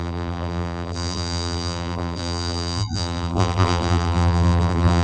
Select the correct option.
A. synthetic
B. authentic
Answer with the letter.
A